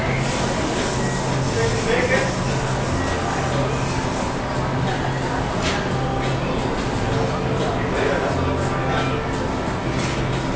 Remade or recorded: recorded